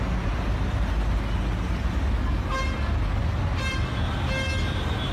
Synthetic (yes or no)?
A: no